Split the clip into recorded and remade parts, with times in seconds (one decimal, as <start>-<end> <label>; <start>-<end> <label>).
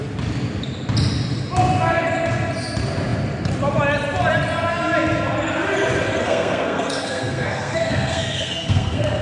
0.0-6.2 recorded; 6.2-9.2 remade